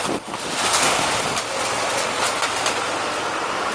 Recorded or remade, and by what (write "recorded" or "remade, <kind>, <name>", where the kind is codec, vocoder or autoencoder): recorded